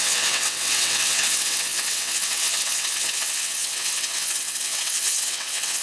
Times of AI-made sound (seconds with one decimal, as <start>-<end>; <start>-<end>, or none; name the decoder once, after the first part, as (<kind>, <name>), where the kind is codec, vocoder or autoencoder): 0.0-5.8 (vocoder, WaveNeXt)